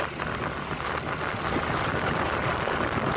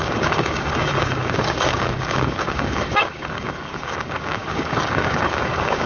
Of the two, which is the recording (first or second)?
first